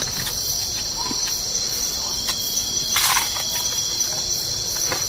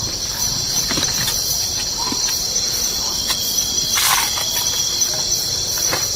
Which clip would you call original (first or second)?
first